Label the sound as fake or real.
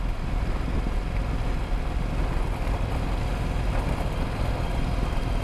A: real